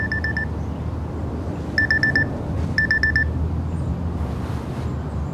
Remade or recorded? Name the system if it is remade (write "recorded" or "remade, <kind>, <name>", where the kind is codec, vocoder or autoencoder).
recorded